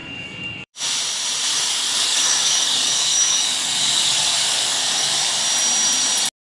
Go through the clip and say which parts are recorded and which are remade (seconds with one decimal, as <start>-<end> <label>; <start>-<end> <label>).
0.0-0.7 remade; 0.7-1.5 recorded; 1.5-5.4 remade; 5.4-6.5 recorded